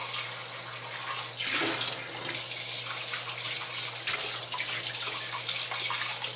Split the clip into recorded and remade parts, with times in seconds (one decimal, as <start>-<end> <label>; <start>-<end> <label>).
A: 0.0-6.4 recorded